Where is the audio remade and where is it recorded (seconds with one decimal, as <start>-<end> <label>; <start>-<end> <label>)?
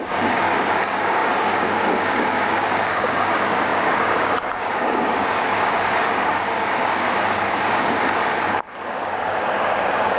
0.0-10.2 remade